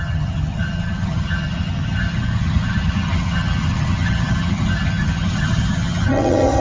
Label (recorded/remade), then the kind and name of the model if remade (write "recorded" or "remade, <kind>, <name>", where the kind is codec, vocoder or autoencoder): remade, vocoder, HiFi-GAN